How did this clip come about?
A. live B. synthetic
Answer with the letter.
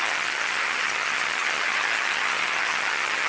B